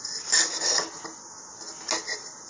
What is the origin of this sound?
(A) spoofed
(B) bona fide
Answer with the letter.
B